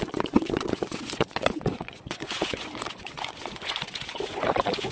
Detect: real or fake fake